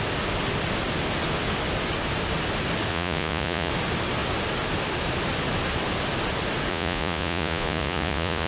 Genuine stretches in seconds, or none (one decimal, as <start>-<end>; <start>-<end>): 0.0-2.9; 3.7-6.7